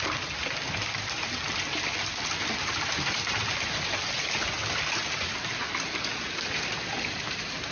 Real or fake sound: real